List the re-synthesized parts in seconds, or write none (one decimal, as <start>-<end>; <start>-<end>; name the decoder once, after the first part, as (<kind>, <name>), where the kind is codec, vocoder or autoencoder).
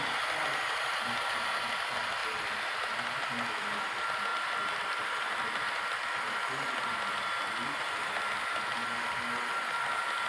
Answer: 2.2-2.7 (vocoder, BigVGAN v2)